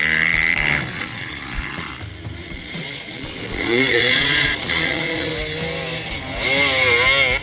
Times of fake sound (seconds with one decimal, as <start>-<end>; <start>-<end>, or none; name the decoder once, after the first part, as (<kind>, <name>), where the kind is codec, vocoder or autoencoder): 0.9-1.9 (vocoder, Vocos); 2.4-5.3